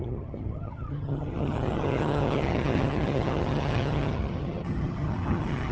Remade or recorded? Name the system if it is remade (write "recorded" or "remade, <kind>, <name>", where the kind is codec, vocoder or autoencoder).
remade, vocoder, HiFi-GAN